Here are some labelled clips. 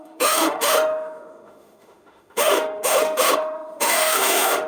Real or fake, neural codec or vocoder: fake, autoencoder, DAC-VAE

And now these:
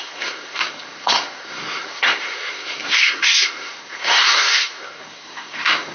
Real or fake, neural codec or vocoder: fake, codec, SNAC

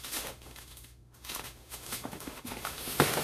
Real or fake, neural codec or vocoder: fake, autoencoder, DAC-VAE